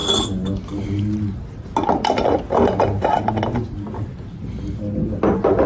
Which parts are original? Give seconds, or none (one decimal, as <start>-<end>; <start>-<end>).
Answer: 0.0-5.7